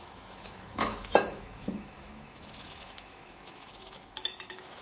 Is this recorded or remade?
remade